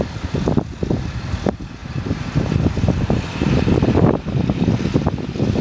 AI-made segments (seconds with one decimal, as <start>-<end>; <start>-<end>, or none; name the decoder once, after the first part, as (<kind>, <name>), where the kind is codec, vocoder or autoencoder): 1.8-4.2 (vocoder, BigVGAN v2)